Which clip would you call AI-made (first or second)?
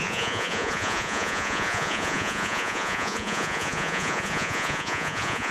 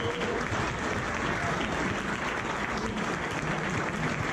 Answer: first